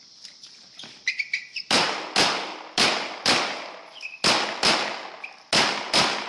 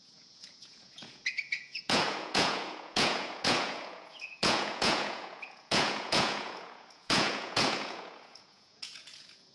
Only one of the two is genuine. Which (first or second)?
first